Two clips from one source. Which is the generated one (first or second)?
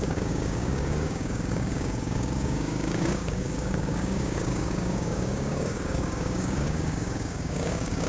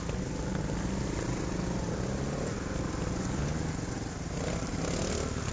first